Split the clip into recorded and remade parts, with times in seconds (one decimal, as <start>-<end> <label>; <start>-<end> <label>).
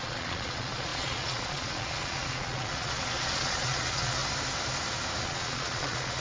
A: 0.0-4.2 remade; 4.2-5.2 recorded; 5.2-6.2 remade